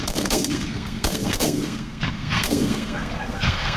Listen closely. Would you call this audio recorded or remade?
remade